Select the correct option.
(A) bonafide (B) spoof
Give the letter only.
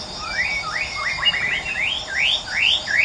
B